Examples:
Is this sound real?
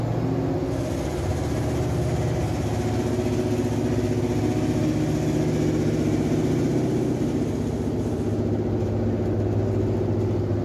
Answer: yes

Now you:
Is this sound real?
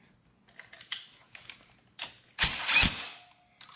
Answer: yes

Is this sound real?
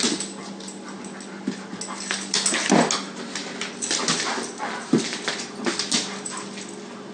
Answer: yes